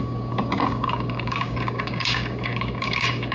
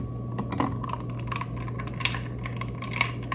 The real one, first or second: second